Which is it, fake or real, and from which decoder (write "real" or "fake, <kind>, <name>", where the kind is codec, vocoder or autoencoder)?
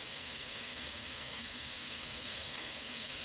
fake, codec, SNAC